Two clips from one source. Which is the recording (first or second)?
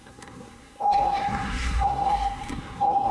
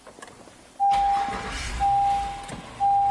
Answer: second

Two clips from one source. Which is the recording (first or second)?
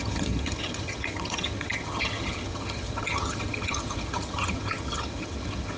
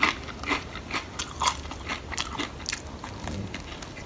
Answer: second